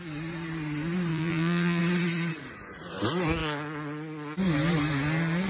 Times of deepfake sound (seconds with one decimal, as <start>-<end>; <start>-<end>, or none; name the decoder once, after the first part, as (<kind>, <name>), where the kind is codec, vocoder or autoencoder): 1.1-1.8 (vocoder, BigVGAN v2)